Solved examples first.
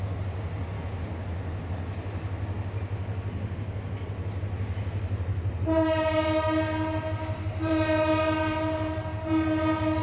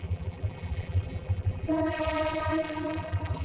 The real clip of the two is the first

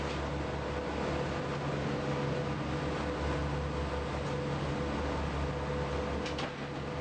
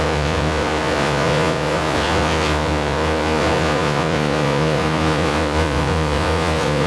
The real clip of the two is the first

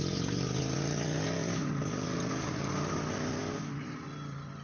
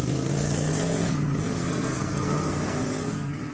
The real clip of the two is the first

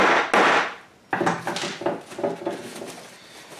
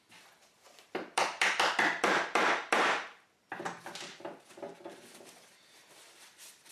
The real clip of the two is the first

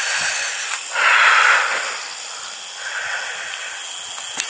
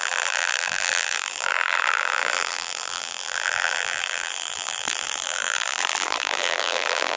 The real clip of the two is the first